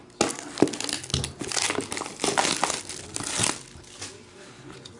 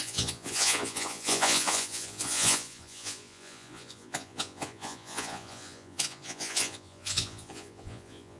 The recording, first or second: first